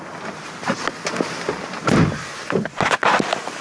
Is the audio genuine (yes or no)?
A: yes